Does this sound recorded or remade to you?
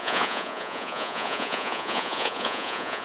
remade